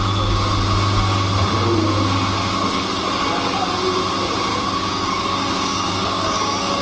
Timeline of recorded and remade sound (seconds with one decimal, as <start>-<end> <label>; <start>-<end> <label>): 0.0-4.5 recorded; 4.5-6.8 remade